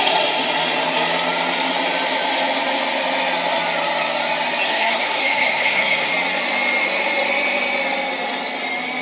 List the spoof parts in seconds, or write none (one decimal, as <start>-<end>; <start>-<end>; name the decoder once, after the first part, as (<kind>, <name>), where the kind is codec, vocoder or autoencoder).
4.7-6.1 (codec, SNAC)